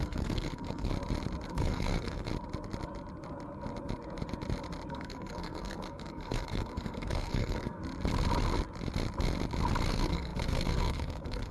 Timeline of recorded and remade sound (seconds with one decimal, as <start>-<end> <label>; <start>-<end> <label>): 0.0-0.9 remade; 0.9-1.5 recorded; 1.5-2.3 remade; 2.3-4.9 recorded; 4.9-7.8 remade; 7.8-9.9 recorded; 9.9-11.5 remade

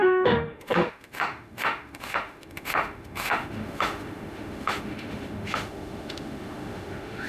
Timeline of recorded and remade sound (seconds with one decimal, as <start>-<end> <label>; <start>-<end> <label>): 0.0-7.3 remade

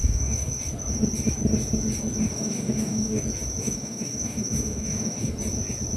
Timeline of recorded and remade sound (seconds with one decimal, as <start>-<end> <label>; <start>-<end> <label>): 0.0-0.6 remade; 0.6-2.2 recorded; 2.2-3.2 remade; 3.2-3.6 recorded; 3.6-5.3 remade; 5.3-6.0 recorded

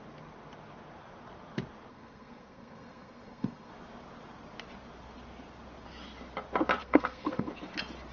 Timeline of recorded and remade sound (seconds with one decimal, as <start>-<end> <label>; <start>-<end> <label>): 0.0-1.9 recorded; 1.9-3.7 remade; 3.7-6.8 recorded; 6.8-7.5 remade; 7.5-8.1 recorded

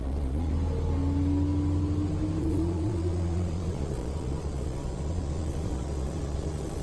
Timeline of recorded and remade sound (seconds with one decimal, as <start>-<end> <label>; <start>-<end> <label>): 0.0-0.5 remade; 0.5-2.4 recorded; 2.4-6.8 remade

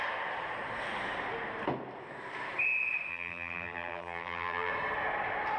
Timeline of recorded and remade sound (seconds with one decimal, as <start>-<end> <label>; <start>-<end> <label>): 0.0-3.1 recorded; 3.1-4.7 remade; 4.7-5.6 recorded

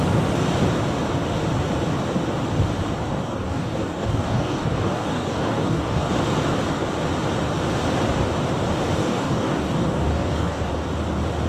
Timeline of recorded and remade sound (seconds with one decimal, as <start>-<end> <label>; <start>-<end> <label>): 0.0-3.1 recorded; 3.1-6.1 remade; 6.1-9.0 recorded; 9.0-10.7 remade; 10.7-11.5 recorded

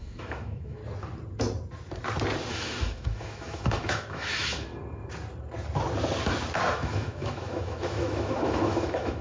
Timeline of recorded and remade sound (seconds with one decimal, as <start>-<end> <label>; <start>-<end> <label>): 0.0-0.8 remade; 0.8-2.5 recorded; 2.5-4.7 remade; 4.7-6.7 recorded; 6.7-9.2 remade